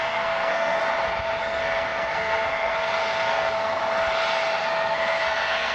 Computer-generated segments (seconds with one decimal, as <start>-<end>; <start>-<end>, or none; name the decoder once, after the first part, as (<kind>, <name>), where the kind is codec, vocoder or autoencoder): 0.0-0.8 (codec, SNAC); 1.4-3.8; 4.6-5.7